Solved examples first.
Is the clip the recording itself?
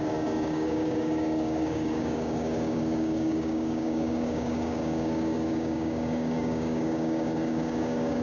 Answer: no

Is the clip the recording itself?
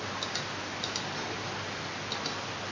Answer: yes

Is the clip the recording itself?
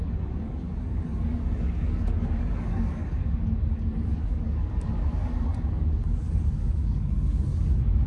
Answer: no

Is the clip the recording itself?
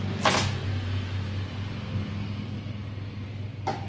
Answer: yes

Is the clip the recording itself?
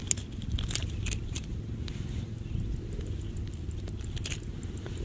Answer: yes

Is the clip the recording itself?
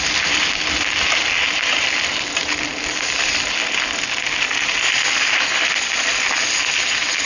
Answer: yes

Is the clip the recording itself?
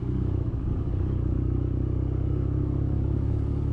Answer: no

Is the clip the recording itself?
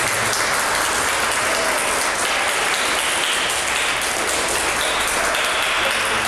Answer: yes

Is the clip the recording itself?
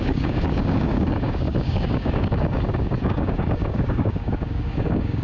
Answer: no